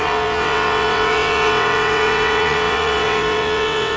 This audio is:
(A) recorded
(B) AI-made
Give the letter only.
B